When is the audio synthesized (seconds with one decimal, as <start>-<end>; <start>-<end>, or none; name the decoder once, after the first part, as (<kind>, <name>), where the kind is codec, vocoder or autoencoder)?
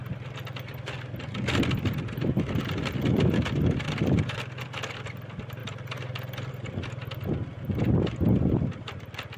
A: none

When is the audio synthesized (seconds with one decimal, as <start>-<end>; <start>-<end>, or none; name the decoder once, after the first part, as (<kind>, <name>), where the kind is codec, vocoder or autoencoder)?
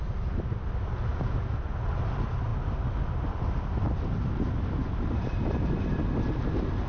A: 1.1-1.7 (vocoder, BigVGAN v2)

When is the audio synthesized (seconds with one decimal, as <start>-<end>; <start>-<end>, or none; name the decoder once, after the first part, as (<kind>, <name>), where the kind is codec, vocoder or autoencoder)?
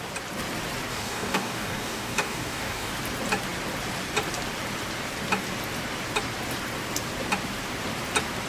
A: 0.9-2.9 (codec, DAC)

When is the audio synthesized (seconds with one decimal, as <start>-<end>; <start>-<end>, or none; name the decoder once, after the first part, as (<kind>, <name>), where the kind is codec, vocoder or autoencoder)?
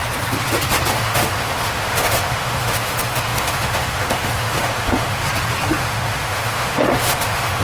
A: 0.9-5.2 (autoencoder, DAC-VAE); 5.7-7.6